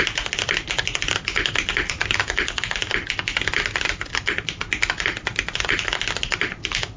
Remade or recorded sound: recorded